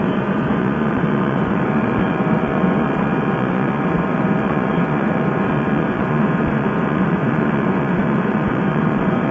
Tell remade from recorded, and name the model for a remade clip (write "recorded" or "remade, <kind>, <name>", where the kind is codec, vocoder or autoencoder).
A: remade, vocoder, Vocos